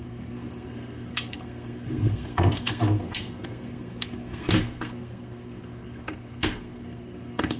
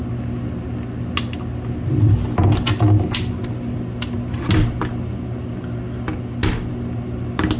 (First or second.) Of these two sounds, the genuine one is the second